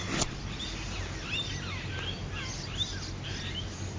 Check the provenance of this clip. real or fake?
real